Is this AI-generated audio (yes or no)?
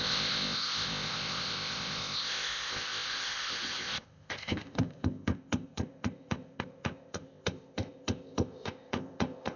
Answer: yes